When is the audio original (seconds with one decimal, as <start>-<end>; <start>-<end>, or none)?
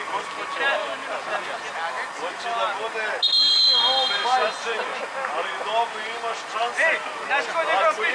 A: 0.0-4.9; 6.4-8.1